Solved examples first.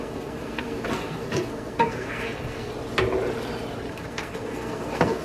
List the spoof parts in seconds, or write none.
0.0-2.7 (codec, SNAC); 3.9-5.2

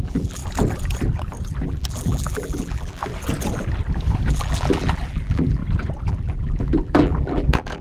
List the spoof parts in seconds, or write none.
0.0-0.4 (vocoder, BigVGAN v2); 1.5-3.0; 4.3-5.6; 6.1-7.8